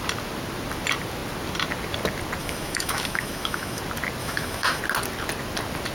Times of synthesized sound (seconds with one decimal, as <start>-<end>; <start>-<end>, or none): 2.4-3.8; 4.2-4.8